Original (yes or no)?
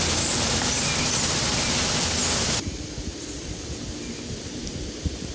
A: yes